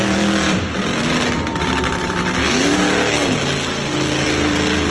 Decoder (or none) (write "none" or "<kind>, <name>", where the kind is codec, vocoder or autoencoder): none